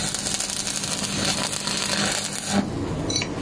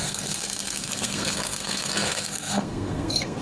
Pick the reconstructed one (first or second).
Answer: second